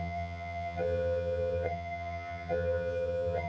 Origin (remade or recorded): remade